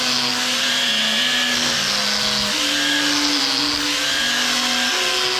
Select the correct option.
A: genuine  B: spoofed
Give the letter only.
A